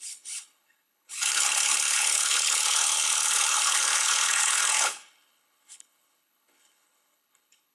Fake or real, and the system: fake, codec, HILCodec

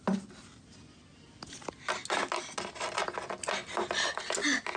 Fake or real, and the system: real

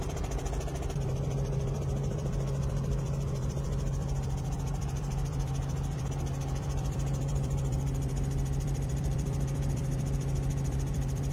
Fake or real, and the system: fake, vocoder, BigVGAN v2